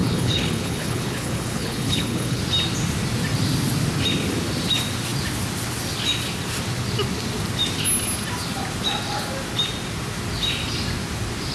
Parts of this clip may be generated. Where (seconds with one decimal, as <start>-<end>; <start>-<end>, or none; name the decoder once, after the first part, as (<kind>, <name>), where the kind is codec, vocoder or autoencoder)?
0.0-2.4 (codec, HILCodec)